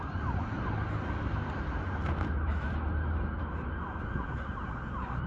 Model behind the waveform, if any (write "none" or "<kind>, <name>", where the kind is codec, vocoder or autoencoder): none